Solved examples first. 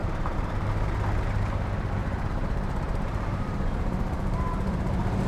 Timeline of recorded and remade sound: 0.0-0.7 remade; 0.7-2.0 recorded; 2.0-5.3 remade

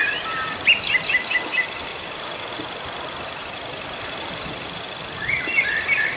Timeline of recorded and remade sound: 0.0-1.9 recorded; 1.9-2.5 remade; 2.5-3.4 recorded; 3.4-4.8 remade; 4.8-6.2 recorded

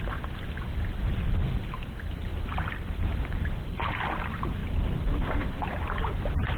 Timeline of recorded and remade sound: 0.0-2.3 recorded; 2.3-3.9 remade; 3.9-4.6 recorded; 4.6-6.6 remade

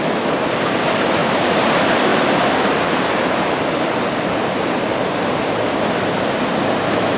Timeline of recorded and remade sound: 0.0-1.2 recorded; 1.2-1.7 remade; 1.7-2.1 recorded; 2.1-5.7 remade; 5.7-7.2 recorded

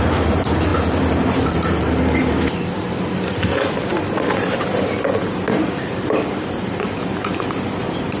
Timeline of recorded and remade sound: 0.0-0.7 remade; 0.7-1.3 recorded; 1.3-8.2 remade